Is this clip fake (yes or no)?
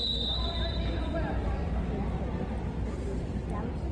yes